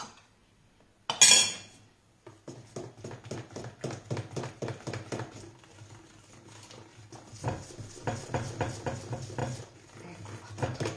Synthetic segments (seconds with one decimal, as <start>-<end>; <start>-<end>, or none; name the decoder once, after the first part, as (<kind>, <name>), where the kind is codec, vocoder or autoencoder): none